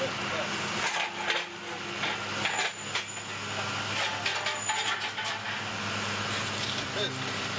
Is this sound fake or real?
real